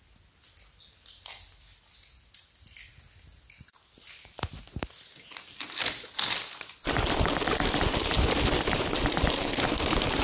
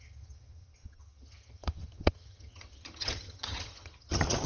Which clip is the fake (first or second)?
second